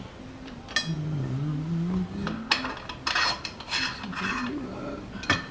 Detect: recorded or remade recorded